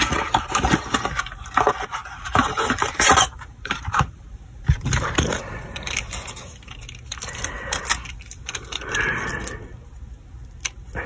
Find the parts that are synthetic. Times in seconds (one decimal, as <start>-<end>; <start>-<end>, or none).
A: 2.0-5.9

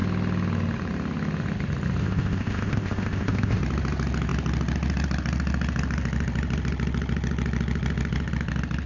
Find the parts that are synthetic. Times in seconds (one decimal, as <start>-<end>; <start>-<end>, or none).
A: 2.0-3.6